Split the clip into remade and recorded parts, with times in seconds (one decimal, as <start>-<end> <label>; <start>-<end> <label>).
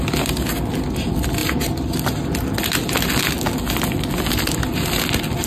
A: 0.0-5.5 recorded